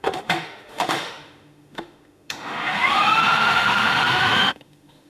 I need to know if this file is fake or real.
fake